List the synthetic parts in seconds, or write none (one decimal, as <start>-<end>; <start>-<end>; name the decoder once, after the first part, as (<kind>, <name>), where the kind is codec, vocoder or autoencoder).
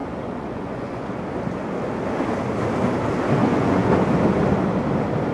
0.0-1.2 (vocoder, Vocos); 3.4-3.9